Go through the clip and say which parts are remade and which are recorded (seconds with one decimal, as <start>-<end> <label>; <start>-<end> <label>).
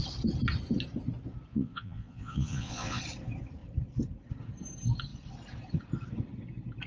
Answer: 0.0-1.5 recorded; 1.5-3.0 remade; 3.0-6.9 recorded